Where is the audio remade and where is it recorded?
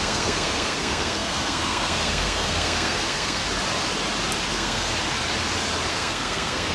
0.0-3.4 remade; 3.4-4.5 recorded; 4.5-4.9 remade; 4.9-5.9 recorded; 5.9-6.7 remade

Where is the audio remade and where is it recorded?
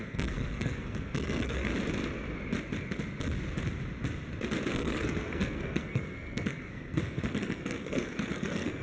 0.0-1.7 remade; 1.7-4.7 recorded; 4.7-8.8 remade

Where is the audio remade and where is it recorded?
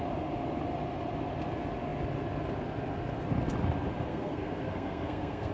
0.0-4.1 recorded; 4.1-5.5 remade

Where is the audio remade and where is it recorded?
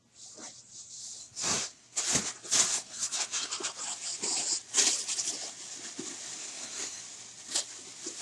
0.0-1.2 recorded; 1.2-2.0 remade; 2.0-2.7 recorded; 2.7-3.5 remade; 3.5-6.4 recorded; 6.4-7.0 remade; 7.0-8.2 recorded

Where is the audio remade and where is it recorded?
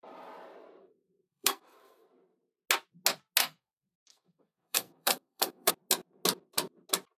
0.0-0.8 recorded; 0.8-2.1 remade; 2.1-3.4 recorded; 3.4-5.7 remade; 5.7-7.2 recorded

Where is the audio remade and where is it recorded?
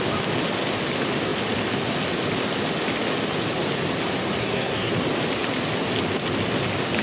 0.0-4.4 recorded; 4.4-4.9 remade; 4.9-7.0 recorded